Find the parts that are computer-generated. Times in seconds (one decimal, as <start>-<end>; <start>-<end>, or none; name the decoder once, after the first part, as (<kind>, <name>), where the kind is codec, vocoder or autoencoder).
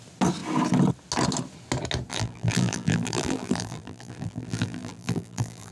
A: 2.1-5.7 (vocoder, BigVGAN v2)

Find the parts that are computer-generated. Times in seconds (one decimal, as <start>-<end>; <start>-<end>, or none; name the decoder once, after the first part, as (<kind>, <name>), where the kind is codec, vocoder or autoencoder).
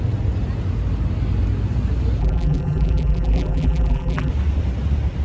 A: 2.2-4.3 (vocoder, BigVGAN v2)